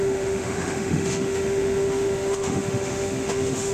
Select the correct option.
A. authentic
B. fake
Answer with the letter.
B